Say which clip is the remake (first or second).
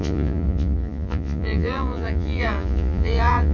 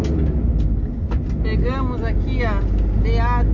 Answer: first